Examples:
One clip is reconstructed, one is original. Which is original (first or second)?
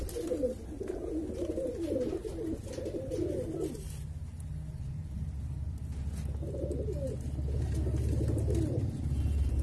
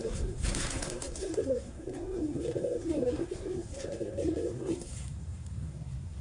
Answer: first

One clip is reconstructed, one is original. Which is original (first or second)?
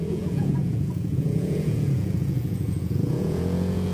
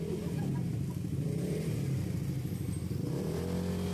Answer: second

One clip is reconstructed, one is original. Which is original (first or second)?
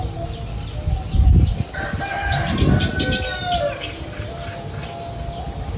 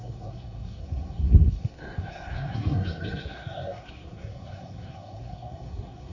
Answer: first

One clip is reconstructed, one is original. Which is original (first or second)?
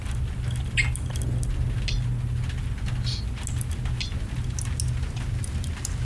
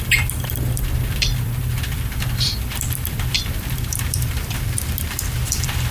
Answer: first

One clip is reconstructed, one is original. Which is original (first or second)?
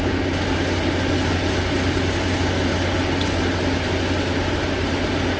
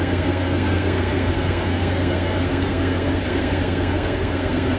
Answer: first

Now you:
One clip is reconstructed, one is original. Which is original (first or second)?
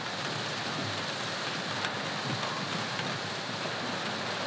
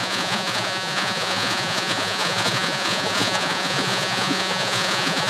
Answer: first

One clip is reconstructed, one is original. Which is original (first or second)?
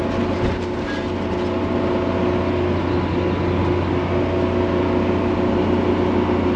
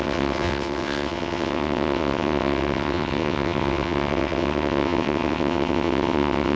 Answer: first